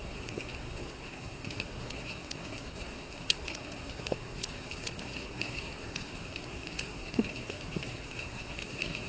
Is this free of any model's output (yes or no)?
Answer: no